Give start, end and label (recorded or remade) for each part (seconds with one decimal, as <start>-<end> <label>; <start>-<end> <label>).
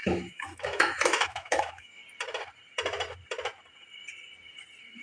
0.0-2.0 remade; 2.0-5.0 recorded